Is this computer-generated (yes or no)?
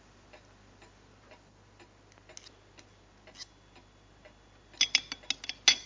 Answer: no